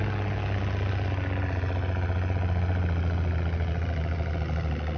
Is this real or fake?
real